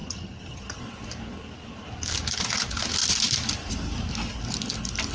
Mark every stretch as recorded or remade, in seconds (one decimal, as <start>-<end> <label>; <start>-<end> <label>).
0.0-0.8 remade; 0.8-5.1 recorded